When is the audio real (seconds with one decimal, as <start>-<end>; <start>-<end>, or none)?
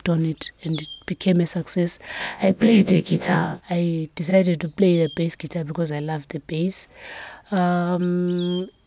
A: 0.0-2.2; 3.6-8.9